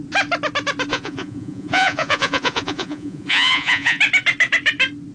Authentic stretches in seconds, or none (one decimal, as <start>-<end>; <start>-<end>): 0.0-0.9; 4.0-5.1